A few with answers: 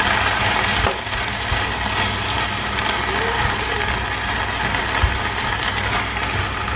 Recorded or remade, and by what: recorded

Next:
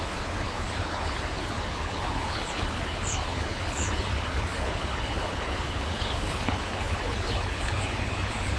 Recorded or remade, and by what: remade, codec, HILCodec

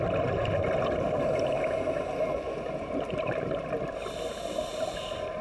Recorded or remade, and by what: recorded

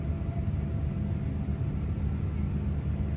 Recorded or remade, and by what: recorded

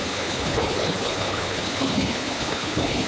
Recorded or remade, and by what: remade, codec, HILCodec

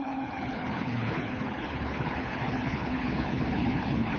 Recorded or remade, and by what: remade, codec, HILCodec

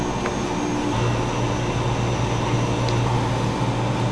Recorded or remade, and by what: recorded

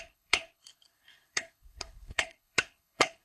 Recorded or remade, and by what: remade, codec, HILCodec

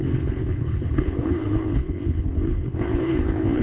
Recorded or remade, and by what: remade, codec, HILCodec